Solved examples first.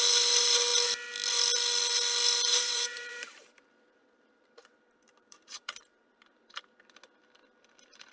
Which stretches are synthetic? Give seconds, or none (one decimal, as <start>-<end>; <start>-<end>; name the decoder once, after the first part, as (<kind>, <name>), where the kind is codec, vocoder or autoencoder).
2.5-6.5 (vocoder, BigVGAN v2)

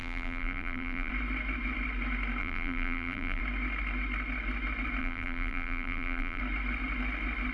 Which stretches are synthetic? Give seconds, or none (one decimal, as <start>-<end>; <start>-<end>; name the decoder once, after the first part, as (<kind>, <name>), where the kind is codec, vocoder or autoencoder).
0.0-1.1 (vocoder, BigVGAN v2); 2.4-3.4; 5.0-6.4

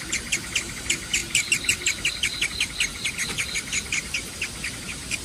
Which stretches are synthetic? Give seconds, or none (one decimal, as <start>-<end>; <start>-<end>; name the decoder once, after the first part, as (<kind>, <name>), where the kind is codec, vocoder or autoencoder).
none

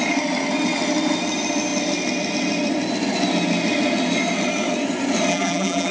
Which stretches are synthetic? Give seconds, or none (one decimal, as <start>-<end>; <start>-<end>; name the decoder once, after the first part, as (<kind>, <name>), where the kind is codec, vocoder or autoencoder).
5.3-5.9 (vocoder, BigVGAN v2)

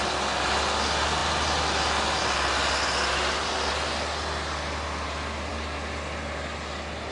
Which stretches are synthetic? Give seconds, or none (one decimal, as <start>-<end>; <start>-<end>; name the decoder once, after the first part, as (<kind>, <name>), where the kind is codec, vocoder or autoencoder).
none

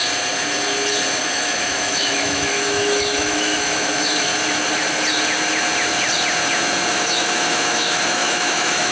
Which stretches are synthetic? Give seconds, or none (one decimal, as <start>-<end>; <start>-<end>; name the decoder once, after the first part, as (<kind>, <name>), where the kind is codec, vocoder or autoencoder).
1.2-4.3 (autoencoder, DAC-VAE); 6.9-8.9

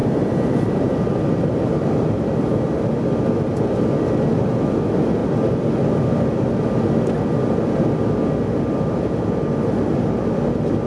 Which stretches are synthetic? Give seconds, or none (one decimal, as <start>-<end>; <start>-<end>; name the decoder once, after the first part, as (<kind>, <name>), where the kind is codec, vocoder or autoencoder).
0.0-2.6 (vocoder, BigVGAN v2)